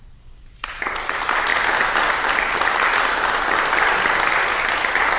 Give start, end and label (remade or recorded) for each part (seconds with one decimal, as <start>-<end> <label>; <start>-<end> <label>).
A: 0.0-5.2 recorded